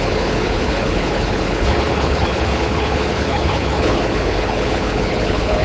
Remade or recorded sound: remade